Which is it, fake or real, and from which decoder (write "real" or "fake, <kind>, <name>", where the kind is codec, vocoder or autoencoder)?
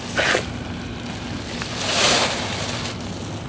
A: real